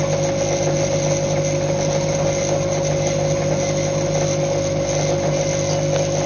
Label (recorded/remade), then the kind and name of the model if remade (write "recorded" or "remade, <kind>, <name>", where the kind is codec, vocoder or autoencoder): recorded